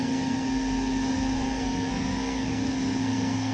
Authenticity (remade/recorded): remade